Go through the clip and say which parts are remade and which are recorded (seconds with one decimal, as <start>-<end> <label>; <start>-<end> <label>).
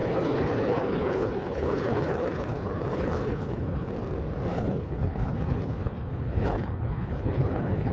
0.0-3.9 remade; 3.9-4.5 recorded; 4.5-7.9 remade